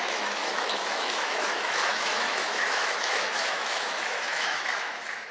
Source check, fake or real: fake